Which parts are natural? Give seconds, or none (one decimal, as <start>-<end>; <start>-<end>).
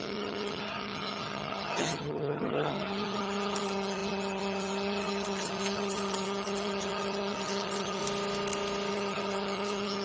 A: 8.0-8.9